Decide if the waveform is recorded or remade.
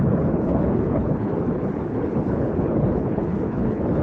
remade